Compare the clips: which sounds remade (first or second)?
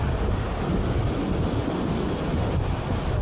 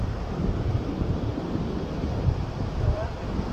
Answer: second